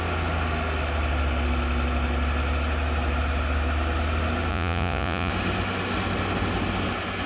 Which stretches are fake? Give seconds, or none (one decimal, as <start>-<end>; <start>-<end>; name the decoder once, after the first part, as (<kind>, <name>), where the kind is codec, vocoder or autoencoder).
4.5-5.3 (vocoder, Vocos)